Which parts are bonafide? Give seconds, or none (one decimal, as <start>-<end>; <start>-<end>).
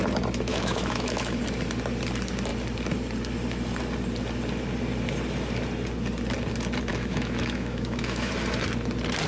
0.0-0.5; 1.4-6.9; 8.3-9.3